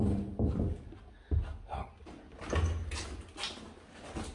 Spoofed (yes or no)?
no